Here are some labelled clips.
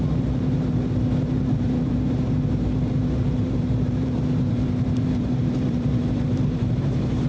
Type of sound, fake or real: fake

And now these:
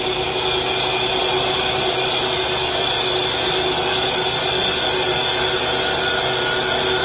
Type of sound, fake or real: real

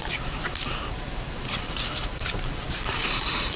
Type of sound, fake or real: fake